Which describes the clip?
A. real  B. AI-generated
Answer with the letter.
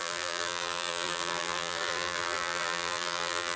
B